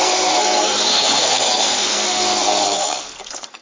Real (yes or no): no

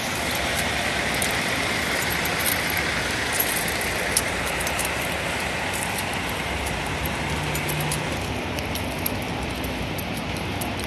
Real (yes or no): yes